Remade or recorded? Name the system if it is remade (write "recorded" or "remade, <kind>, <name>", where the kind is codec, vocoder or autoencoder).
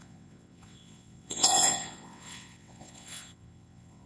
remade, vocoder, WaveNeXt